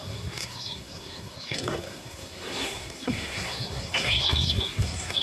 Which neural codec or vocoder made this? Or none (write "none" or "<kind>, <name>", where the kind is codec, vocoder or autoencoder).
codec, SNAC